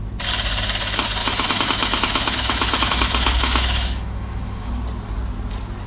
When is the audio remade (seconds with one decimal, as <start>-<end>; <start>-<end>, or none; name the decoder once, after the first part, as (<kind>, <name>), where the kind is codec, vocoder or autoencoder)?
1.2-4.7 (autoencoder, DAC-VAE)

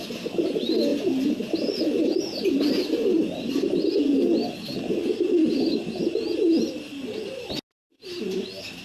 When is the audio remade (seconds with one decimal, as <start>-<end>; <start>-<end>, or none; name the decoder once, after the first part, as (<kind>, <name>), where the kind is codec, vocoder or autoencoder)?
none